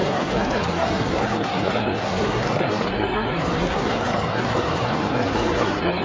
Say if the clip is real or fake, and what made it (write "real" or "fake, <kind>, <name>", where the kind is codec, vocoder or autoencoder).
fake, codec, SNAC